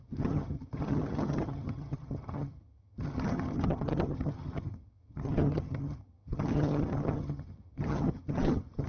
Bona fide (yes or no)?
no